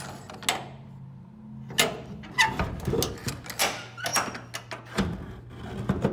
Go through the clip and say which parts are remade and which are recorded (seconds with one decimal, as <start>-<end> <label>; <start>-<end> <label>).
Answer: 0.0-6.1 recorded